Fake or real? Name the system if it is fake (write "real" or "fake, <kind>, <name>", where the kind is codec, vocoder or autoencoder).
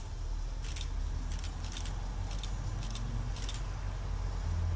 real